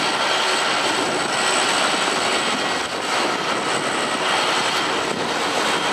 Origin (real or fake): real